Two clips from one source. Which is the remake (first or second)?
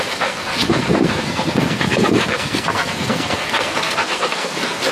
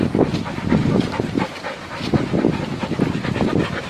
first